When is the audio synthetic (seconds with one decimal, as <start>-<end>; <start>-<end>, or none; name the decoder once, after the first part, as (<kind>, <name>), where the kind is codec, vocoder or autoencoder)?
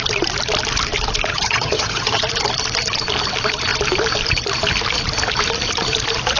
1.3-2.2 (vocoder, HiFi-GAN)